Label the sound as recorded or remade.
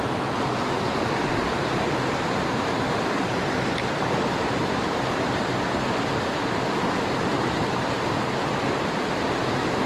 recorded